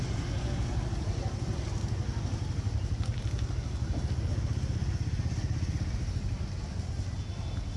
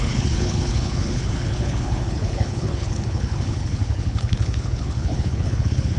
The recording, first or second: first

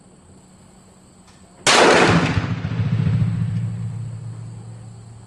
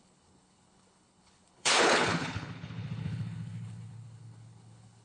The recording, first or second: first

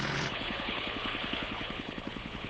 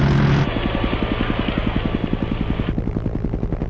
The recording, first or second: second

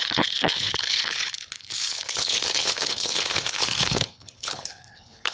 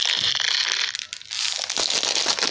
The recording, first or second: second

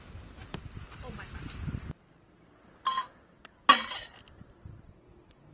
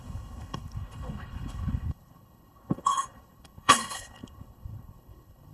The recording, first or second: first